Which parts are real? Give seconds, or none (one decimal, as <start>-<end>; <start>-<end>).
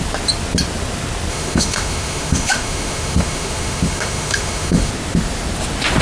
0.0-1.3; 4.9-6.0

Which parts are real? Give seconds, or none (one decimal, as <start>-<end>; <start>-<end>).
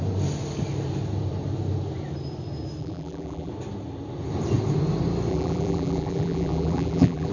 0.0-2.8; 3.5-5.3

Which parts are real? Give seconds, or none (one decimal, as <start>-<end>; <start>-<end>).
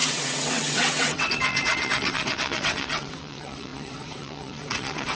none